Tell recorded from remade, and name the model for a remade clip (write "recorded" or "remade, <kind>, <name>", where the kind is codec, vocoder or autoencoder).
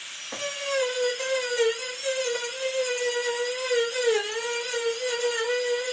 recorded